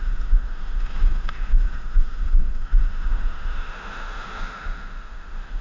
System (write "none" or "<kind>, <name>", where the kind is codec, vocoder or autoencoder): autoencoder, DAC-VAE